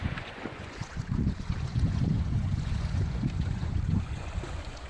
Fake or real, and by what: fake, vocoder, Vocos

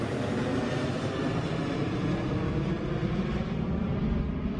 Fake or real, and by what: real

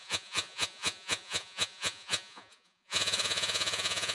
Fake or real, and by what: fake, vocoder, Vocos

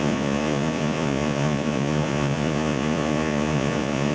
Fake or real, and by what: fake, vocoder, Vocos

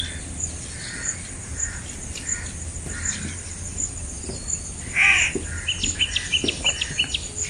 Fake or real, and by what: real